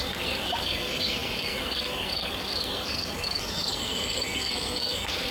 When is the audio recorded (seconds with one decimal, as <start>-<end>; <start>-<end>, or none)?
none